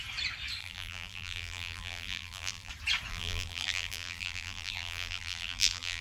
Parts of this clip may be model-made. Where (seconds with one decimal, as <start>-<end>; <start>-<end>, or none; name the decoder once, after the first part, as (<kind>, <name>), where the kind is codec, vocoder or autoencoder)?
0.6-2.7 (vocoder, BigVGAN v2); 3.1-6.0